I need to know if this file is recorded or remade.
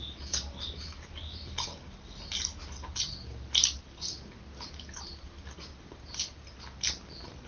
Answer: recorded